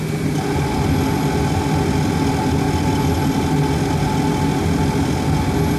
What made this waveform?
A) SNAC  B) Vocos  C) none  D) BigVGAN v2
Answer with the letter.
C